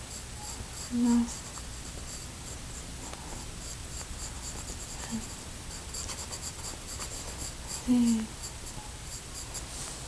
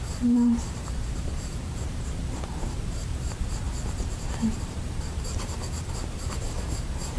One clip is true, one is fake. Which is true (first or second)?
first